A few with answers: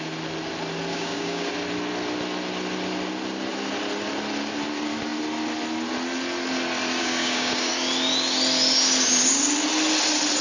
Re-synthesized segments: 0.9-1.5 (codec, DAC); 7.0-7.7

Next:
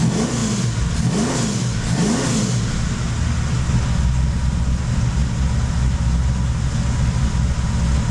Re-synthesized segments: none

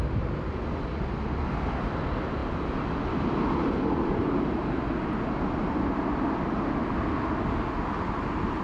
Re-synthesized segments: none

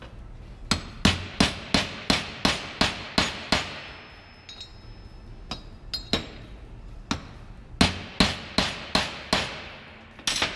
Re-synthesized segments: none